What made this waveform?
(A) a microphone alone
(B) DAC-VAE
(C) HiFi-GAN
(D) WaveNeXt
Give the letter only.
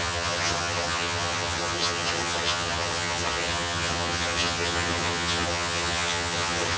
C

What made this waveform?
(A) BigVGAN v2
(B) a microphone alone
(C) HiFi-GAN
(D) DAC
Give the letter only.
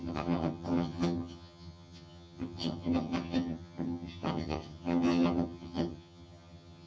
C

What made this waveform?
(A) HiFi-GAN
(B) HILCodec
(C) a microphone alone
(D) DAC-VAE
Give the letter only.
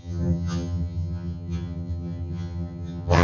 A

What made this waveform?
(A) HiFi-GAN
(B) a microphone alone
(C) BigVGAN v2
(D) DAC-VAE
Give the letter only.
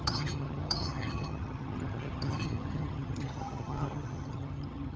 A